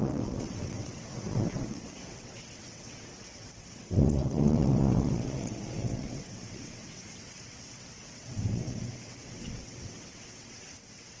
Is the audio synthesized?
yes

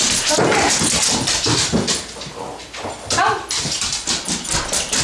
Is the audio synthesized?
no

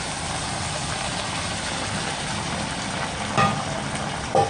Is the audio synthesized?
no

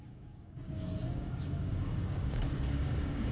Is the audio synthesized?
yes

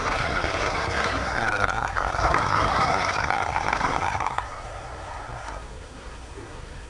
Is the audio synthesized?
yes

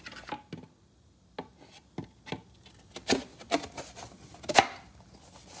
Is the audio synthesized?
no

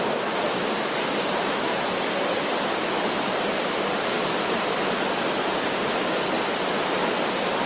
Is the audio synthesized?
no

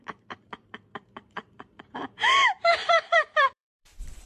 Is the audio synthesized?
yes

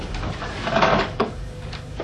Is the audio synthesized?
yes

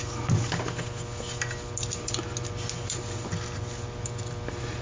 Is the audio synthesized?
no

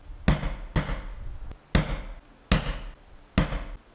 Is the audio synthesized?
no